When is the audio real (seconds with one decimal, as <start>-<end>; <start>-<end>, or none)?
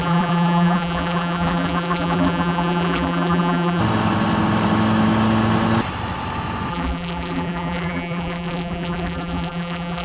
3.8-6.7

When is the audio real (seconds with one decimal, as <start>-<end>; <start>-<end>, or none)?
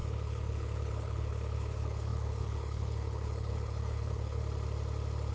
4.4-5.3